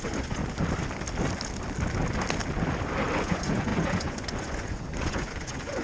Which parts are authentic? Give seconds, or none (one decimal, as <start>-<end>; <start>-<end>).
0.4-3.2